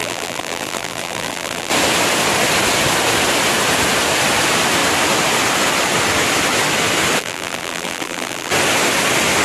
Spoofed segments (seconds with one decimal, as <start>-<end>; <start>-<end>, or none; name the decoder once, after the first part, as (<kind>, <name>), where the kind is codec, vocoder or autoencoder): 0.0-1.7 (vocoder, BigVGAN v2); 7.2-8.5